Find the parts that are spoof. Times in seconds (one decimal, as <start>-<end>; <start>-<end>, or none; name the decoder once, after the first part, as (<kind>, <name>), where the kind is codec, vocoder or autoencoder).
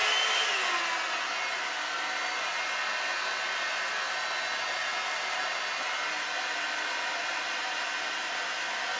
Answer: none